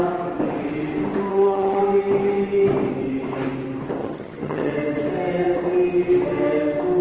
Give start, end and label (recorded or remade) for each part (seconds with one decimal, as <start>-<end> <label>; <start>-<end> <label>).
0.0-1.3 recorded; 1.3-1.8 remade; 1.8-4.0 recorded; 4.0-4.7 remade; 4.7-7.0 recorded